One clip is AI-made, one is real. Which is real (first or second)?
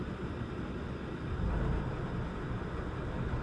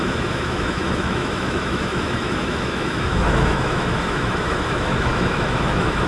first